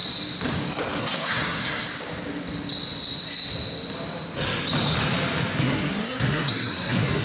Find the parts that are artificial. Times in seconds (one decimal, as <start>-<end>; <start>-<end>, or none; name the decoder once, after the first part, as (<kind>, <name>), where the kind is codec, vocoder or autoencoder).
1.0-1.9 (codec, SNAC); 5.6-7.2